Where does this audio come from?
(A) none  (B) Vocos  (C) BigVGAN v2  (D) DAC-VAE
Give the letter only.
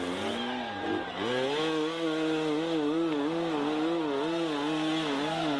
A